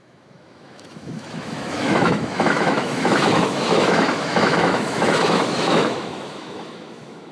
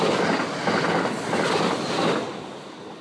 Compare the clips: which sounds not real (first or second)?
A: first